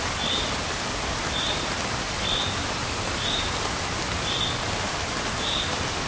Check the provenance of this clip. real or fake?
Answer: real